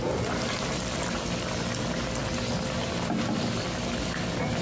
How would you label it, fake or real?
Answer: real